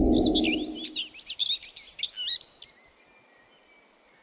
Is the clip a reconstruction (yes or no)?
no